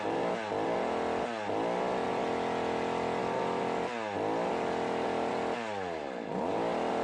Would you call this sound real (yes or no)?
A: yes